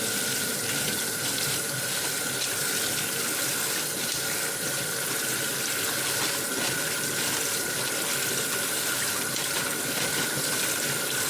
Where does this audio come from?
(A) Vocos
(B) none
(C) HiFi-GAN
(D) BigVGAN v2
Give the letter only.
B